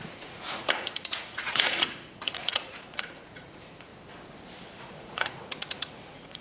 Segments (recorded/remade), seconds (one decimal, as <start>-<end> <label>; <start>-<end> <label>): 0.0-3.9 remade; 3.9-4.9 recorded; 4.9-6.4 remade